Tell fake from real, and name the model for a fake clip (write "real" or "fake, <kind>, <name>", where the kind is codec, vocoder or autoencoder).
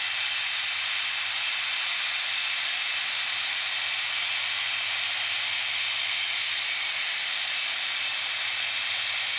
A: real